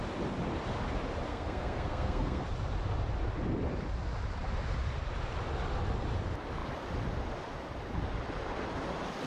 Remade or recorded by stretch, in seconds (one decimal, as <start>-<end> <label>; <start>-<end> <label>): 0.0-1.3 recorded; 1.3-2.4 remade; 2.4-9.3 recorded